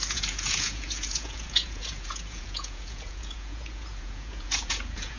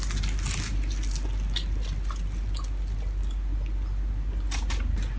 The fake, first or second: first